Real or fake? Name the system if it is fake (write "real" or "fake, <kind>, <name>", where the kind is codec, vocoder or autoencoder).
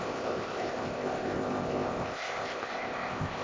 fake, codec, ZipCodec